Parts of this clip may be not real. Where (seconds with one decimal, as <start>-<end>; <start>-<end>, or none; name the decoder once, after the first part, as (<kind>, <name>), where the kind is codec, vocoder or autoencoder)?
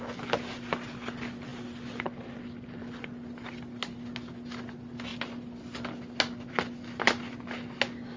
none